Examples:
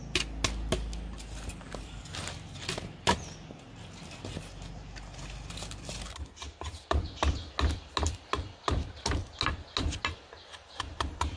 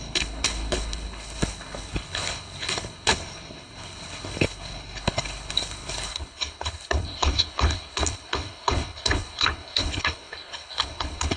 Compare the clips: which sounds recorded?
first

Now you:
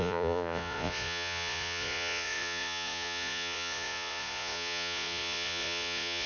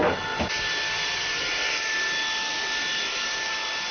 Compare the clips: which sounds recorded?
second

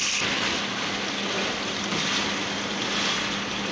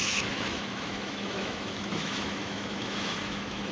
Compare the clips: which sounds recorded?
first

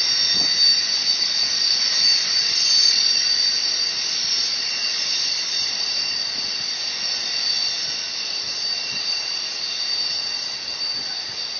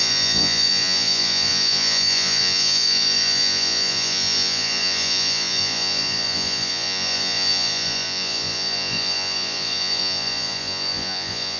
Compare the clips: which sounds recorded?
first